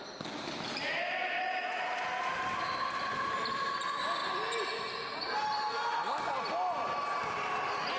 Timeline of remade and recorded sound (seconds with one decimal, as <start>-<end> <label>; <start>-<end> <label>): 0.0-8.0 recorded